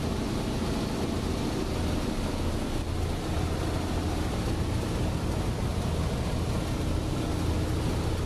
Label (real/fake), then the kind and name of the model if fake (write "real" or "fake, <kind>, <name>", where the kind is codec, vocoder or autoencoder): real